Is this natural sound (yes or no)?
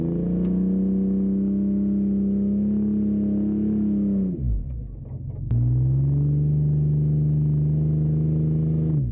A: yes